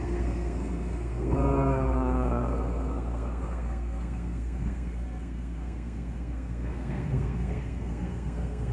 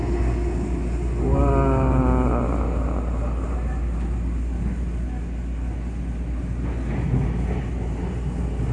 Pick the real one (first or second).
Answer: second